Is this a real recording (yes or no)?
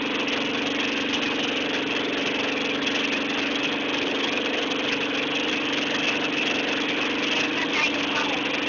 yes